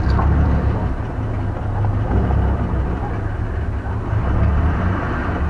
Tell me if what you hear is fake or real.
real